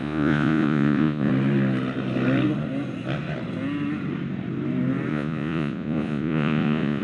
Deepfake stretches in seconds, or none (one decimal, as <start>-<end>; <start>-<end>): 0.0-1.3; 5.1-7.0